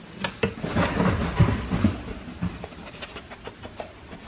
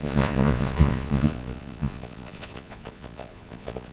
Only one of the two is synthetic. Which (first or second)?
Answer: second